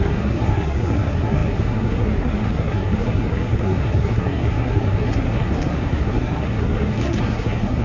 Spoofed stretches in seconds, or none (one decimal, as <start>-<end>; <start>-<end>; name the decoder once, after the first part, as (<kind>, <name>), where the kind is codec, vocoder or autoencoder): 0.0-7.8 (codec, SNAC)

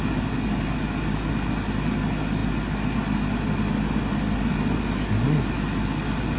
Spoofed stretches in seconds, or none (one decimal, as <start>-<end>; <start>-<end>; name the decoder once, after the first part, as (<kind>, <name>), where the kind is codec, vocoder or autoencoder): none

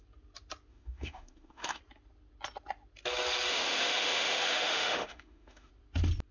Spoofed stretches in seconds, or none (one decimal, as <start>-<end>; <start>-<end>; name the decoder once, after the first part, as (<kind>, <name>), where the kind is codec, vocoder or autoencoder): 0.7-1.8 (autoencoder, DAC-VAE); 3.5-5.7

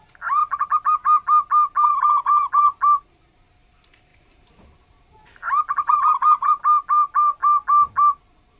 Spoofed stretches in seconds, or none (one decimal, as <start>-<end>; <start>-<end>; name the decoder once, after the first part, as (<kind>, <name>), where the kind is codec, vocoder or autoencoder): none